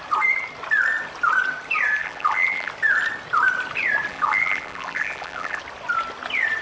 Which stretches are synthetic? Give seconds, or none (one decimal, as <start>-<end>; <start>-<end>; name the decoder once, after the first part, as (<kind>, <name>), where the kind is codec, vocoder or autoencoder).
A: 2.0-2.7 (vocoder, BigVGAN v2); 4.1-5.6

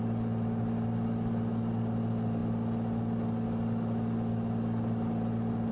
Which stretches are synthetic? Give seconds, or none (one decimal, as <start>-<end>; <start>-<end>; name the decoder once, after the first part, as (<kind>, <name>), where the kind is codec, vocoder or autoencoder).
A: none